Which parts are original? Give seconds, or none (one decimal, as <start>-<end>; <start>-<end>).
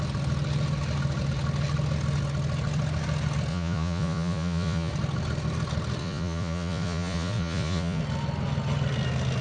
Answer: 0.0-3.5; 4.9-6.0; 8.0-9.4